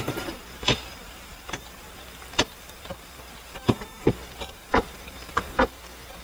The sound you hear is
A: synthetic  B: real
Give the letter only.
A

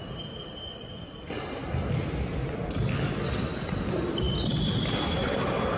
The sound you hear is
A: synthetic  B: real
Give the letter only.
B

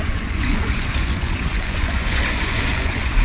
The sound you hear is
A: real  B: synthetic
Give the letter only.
B